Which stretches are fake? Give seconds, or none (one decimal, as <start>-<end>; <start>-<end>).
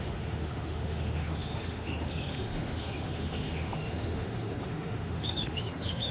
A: 0.0-6.1